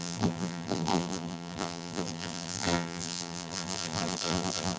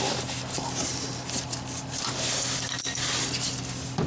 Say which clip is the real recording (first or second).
second